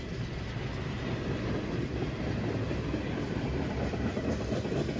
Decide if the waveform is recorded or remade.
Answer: recorded